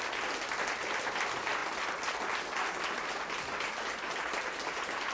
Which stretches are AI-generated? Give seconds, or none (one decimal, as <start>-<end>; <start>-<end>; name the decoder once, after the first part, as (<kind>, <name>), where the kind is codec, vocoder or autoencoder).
none

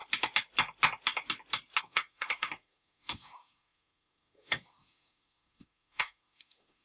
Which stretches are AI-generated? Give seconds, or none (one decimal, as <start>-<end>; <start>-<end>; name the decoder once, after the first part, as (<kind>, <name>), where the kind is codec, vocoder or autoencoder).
1.8-6.8 (codec, SNAC)